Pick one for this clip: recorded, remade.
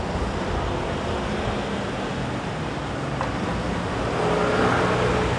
recorded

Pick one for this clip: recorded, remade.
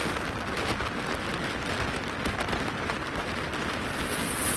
recorded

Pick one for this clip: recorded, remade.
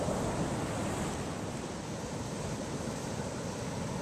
recorded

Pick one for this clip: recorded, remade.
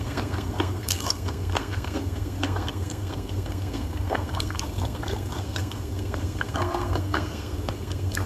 remade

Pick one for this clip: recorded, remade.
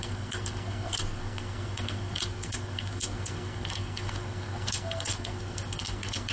remade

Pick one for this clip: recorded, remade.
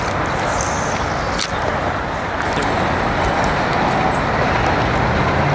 recorded